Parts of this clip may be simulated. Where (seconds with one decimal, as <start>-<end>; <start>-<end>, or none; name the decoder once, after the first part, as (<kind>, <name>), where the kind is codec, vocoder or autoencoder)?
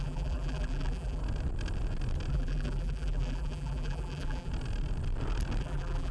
0.0-1.2 (vocoder, BigVGAN v2); 2.3-4.5; 5.6-6.1